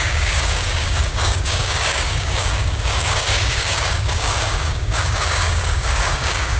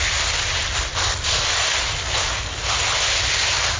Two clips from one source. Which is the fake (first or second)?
first